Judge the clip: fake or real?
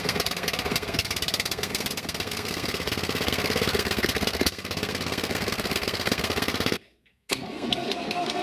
fake